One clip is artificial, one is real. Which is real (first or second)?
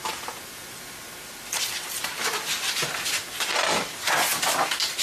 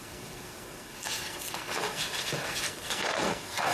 first